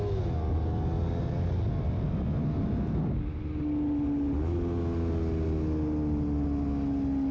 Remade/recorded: recorded